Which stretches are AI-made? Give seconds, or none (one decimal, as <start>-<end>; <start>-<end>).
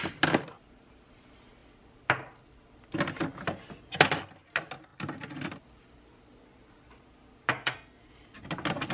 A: 7.5-8.1